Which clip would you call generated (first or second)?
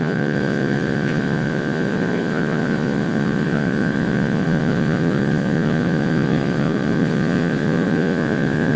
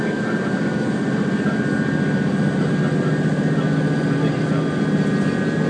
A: first